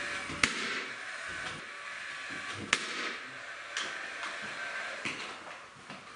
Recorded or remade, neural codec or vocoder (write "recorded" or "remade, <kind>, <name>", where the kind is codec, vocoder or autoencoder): recorded